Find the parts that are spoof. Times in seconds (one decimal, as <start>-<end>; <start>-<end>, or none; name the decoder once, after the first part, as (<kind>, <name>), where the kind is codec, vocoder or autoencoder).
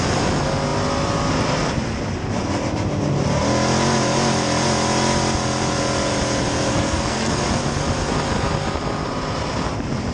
6.7-7.4 (codec, SNAC)